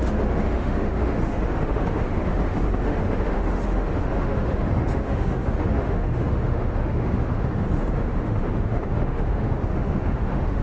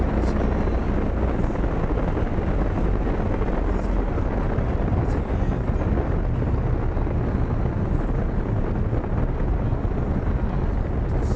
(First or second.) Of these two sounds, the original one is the second